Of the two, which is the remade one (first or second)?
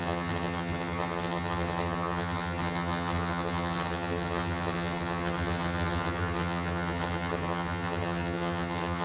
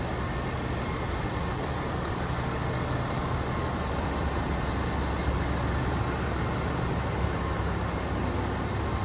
first